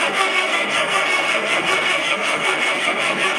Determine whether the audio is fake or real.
fake